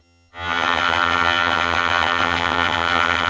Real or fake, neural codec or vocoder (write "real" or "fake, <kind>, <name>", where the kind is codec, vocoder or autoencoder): fake, vocoder, HiFi-GAN